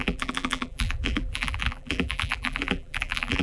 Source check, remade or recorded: remade